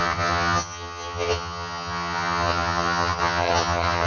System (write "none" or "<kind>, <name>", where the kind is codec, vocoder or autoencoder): vocoder, HiFi-GAN